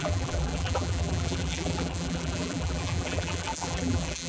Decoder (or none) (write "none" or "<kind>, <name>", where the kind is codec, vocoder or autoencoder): vocoder, BigVGAN v2